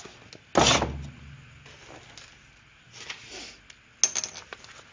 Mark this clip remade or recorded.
recorded